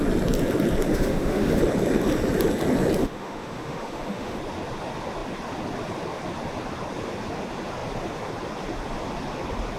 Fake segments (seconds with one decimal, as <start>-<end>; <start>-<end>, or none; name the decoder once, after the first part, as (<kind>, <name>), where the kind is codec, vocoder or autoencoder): 0.9-1.6 (autoencoder, DAC-VAE); 3.0-4.4